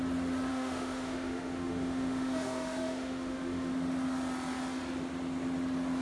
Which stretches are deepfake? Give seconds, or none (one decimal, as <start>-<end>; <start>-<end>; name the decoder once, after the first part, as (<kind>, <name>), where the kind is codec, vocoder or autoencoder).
0.5-3.7 (autoencoder, DAC-VAE)